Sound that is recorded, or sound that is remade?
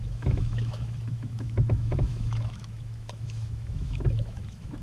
remade